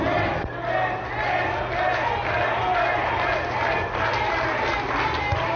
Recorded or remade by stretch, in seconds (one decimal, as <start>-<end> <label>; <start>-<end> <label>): 0.0-5.6 recorded